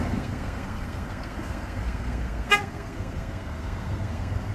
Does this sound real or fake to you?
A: fake